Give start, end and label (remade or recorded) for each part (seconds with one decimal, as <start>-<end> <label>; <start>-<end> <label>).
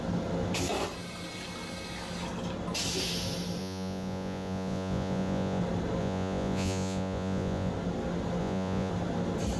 0.0-3.6 recorded; 3.6-5.6 remade; 5.6-6.0 recorded; 6.0-7.7 remade; 7.7-8.4 recorded; 8.4-8.9 remade; 8.9-9.6 recorded